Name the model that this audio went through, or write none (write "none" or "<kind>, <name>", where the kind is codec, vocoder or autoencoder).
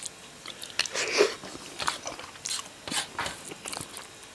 none